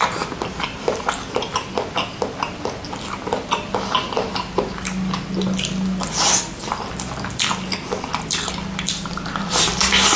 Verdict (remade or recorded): recorded